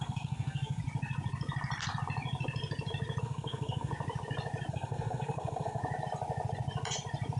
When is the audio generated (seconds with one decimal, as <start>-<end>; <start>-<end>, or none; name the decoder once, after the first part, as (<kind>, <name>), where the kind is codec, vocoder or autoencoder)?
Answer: 0.0-0.8 (codec, SNAC); 3.2-3.9; 4.7-5.8